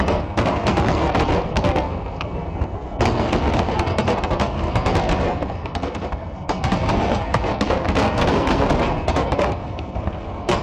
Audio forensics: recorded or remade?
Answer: remade